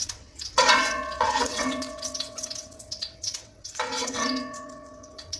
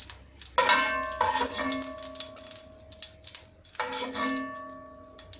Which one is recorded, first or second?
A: second